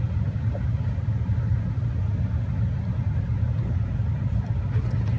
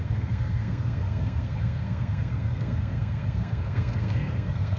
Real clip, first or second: first